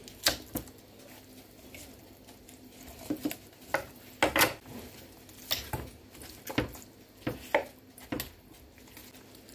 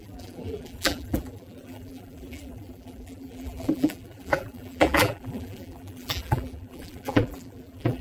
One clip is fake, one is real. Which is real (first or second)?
first